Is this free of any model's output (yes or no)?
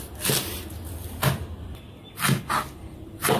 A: yes